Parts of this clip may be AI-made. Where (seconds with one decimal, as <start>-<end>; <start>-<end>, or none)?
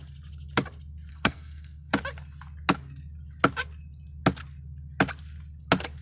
1.1-1.9